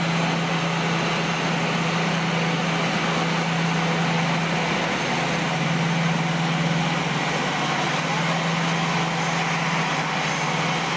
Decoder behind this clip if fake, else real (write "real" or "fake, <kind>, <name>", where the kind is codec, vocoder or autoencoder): real